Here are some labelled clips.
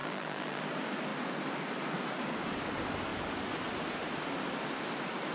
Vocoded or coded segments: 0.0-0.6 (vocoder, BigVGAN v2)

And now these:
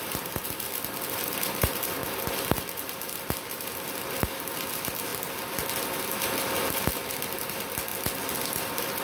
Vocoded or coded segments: 0.0-7.9 (vocoder, BigVGAN v2); 8.5-9.0

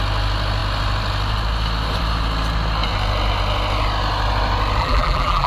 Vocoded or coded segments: 4.8-5.5 (vocoder, BigVGAN v2)

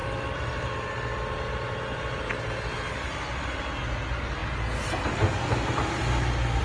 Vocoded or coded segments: 1.9-2.4 (vocoder, BigVGAN v2)

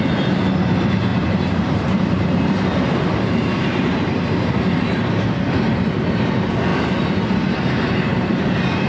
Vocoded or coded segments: 1.1-5.2 (vocoder, BigVGAN v2)

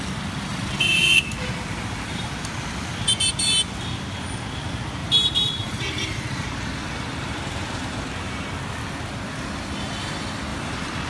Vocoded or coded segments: 0.5-2.2 (vocoder, BigVGAN v2); 5.0-8.4; 10.5-11.1